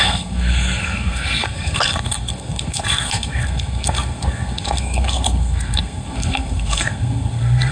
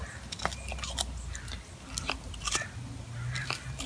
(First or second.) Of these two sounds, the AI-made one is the first